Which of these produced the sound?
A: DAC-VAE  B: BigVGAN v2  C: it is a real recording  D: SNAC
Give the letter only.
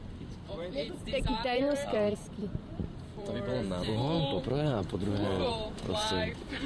B